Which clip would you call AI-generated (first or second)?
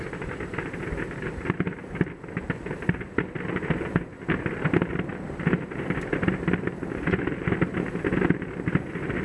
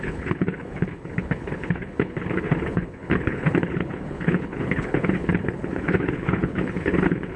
second